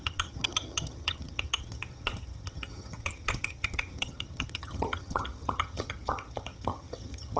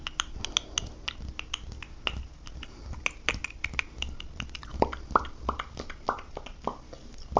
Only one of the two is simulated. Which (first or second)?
first